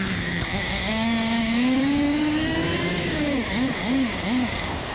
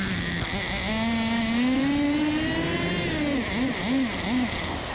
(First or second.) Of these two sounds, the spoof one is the first